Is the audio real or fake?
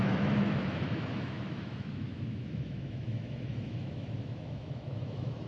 fake